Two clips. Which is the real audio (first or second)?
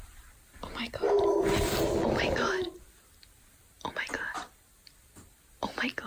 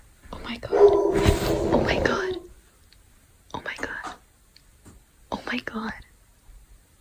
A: second